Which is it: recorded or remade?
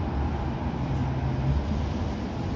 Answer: recorded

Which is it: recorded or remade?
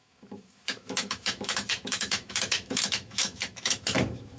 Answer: remade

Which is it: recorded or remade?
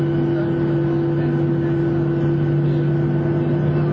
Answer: recorded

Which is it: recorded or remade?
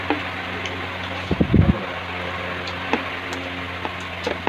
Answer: recorded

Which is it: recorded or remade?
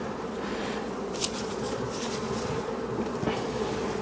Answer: remade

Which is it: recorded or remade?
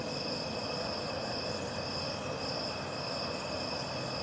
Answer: recorded